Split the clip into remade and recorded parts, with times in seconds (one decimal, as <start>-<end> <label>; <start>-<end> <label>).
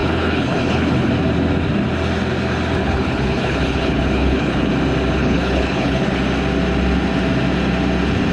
0.0-1.1 remade; 1.1-2.8 recorded; 2.8-4.7 remade; 4.7-5.2 recorded; 5.2-6.2 remade; 6.2-8.3 recorded